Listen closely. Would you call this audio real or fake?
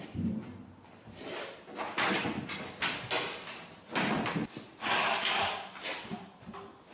real